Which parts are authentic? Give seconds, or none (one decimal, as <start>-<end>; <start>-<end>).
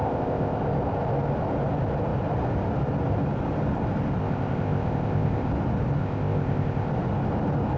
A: 0.6-4.2; 5.5-6.0; 6.9-7.8